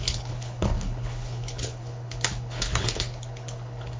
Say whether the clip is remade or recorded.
remade